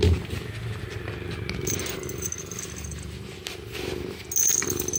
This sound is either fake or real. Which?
real